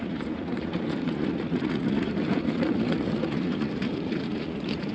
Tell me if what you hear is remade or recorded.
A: remade